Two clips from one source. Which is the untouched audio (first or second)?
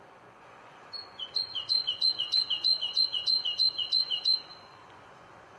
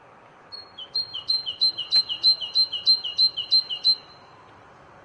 second